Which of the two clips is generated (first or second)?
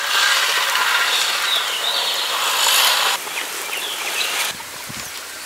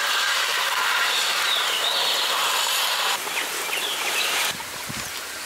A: second